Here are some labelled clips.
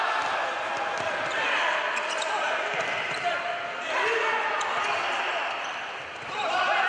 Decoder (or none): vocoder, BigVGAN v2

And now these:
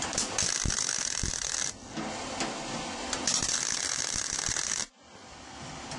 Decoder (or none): none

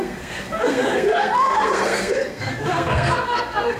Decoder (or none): codec, SNAC